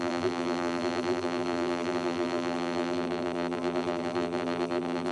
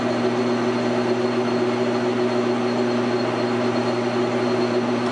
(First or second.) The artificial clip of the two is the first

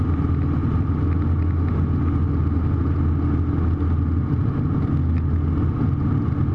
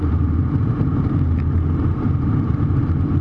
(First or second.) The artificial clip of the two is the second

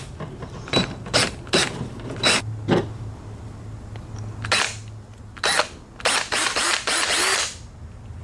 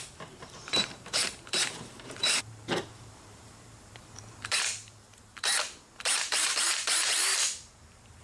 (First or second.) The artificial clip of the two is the second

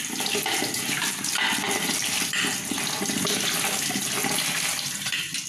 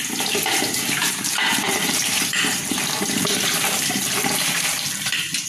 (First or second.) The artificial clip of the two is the second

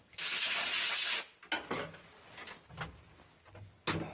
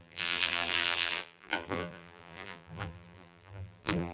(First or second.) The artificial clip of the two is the second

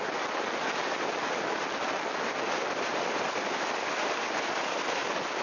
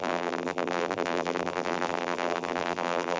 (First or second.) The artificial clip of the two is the second